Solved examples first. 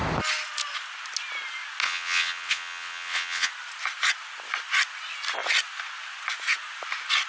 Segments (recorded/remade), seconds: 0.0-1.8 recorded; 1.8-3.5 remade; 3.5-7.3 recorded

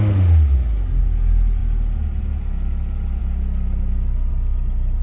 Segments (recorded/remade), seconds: 0.0-5.0 recorded